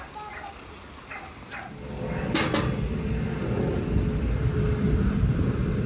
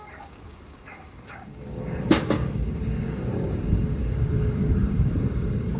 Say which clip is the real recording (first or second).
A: first